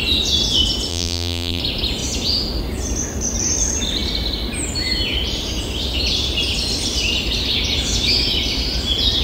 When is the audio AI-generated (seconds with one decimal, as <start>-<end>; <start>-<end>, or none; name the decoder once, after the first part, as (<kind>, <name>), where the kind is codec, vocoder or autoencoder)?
0.9-1.6 (vocoder, BigVGAN v2)